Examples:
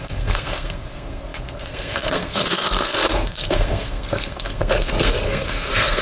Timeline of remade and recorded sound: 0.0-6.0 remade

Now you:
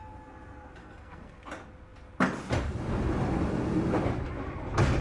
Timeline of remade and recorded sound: 0.0-0.8 recorded; 0.8-1.4 remade; 1.4-5.0 recorded

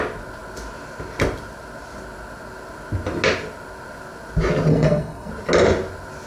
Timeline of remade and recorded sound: 0.0-4.7 recorded; 4.7-5.3 remade; 5.3-6.3 recorded